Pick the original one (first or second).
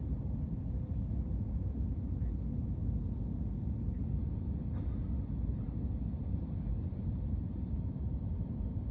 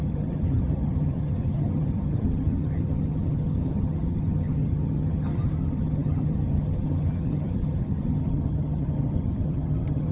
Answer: first